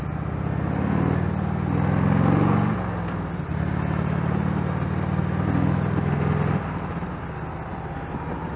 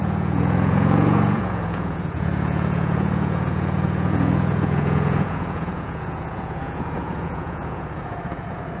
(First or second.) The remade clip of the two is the second